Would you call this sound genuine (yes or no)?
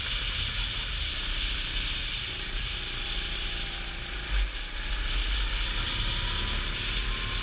yes